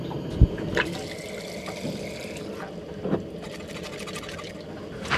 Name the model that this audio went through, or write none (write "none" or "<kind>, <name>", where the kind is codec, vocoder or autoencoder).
none